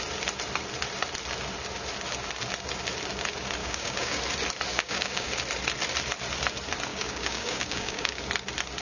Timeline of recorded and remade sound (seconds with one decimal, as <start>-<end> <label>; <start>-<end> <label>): 0.0-3.6 recorded; 3.6-4.2 remade; 4.2-4.7 recorded; 4.7-5.3 remade; 5.3-6.9 recorded; 6.9-8.2 remade; 8.2-8.8 recorded

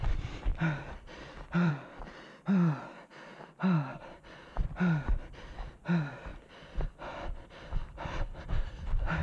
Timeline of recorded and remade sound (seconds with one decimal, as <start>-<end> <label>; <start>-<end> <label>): 0.0-0.5 recorded; 0.5-1.7 remade; 1.7-3.9 recorded; 3.9-5.4 remade; 5.4-6.3 recorded; 6.3-8.7 remade; 8.7-9.2 recorded